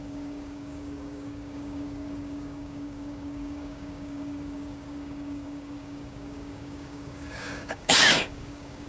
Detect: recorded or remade remade